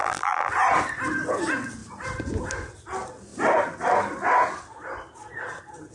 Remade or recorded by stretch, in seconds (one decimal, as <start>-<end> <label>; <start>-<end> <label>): 0.0-0.5 remade; 0.5-5.9 recorded